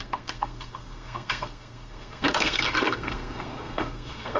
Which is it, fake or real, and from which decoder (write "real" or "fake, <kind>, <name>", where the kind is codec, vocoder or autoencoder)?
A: fake, codec, SNAC